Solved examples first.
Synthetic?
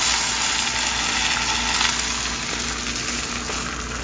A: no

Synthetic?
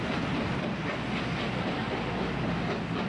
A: no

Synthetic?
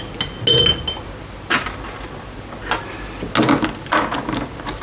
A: no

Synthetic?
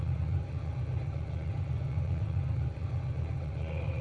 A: yes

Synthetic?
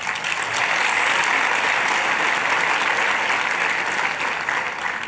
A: no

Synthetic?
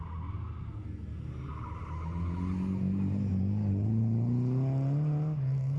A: no